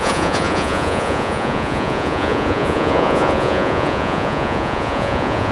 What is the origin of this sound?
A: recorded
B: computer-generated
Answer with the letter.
B